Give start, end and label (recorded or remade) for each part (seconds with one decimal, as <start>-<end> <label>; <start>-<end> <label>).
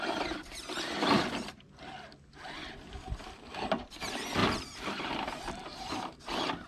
0.0-0.4 recorded; 0.4-1.2 remade; 1.2-2.6 recorded; 2.6-3.3 remade; 3.3-4.4 recorded; 4.4-5.5 remade; 5.5-6.7 recorded